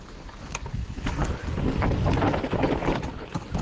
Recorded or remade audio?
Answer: recorded